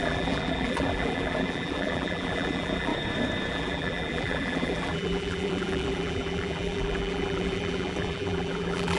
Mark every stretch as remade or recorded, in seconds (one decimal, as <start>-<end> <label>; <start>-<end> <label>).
0.0-2.9 remade; 2.9-3.5 recorded; 3.5-9.0 remade